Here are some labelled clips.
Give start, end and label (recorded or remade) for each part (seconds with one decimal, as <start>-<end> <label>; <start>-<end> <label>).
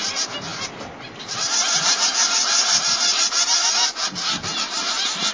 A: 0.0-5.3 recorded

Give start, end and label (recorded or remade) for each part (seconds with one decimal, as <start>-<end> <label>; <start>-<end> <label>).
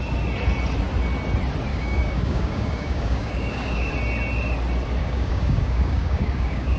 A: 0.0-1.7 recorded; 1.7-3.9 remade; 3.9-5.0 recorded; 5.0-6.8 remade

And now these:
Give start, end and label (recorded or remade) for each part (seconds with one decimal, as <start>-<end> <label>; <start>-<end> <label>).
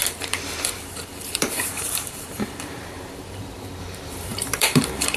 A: 0.0-5.2 remade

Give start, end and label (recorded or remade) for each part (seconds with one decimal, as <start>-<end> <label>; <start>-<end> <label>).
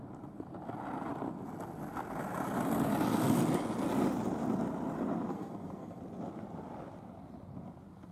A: 0.0-5.3 recorded; 5.3-6.0 remade; 6.0-8.1 recorded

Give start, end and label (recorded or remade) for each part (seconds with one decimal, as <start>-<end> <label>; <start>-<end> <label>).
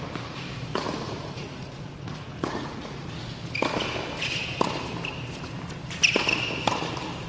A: 0.0-0.7 recorded; 0.7-3.1 remade; 3.1-7.3 recorded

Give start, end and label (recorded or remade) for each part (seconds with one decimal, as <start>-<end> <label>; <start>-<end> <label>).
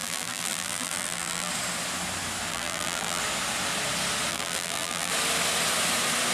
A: 0.0-1.5 remade; 1.5-2.5 recorded; 2.5-3.2 remade; 3.2-4.3 recorded; 4.3-5.1 remade; 5.1-6.3 recorded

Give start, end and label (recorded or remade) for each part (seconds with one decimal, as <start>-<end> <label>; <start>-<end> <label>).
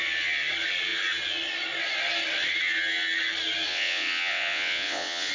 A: 0.0-3.7 recorded; 3.7-5.3 remade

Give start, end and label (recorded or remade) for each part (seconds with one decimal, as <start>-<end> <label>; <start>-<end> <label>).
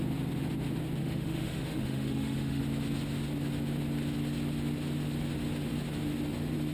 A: 0.0-1.0 recorded; 1.0-2.6 remade; 2.6-6.7 recorded